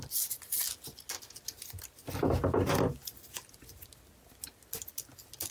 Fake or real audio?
real